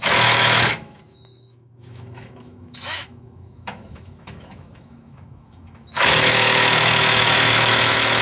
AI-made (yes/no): yes